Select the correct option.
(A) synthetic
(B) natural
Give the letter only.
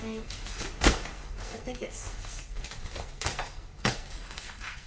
A